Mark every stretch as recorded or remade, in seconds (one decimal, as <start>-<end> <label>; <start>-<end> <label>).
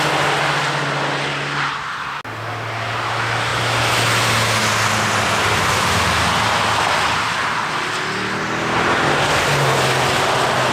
0.0-10.7 recorded